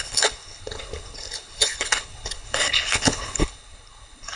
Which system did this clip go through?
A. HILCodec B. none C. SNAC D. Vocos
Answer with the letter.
A